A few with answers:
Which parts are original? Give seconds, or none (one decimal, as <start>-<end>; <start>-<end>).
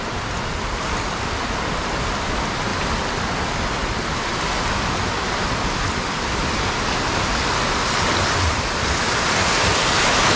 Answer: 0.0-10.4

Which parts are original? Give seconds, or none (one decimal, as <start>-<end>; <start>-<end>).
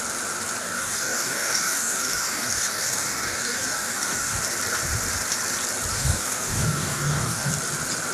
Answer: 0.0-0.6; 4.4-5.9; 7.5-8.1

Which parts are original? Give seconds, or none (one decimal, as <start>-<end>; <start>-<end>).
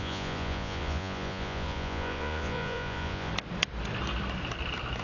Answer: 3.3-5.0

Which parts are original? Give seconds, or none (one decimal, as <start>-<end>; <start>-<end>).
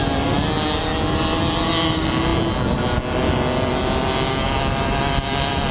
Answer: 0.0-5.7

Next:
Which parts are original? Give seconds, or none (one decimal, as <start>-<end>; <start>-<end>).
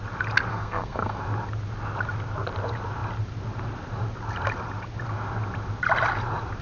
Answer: 0.0-0.5; 1.2-6.6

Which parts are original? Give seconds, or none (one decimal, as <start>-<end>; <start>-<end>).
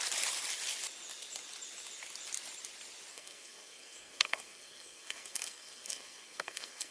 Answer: 0.0-3.1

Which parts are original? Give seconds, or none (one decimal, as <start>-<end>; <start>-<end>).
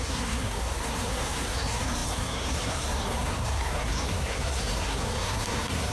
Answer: none